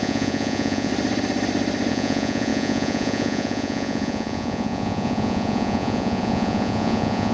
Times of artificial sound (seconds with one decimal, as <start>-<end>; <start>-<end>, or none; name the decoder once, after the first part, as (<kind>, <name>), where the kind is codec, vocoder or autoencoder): 0.0-0.9 (vocoder, Vocos); 1.9-7.3